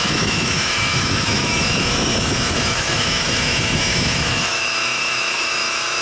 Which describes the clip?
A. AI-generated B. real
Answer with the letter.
A